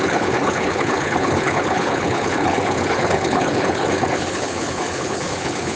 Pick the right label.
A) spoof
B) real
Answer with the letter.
A